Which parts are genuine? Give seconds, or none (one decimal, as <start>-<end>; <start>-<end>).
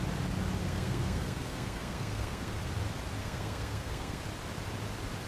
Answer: 0.0-0.6; 2.7-3.2; 4.2-5.3